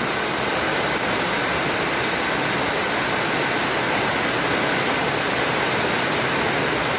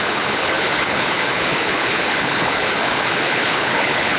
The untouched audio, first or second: first